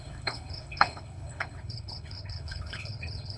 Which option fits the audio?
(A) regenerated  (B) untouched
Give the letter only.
A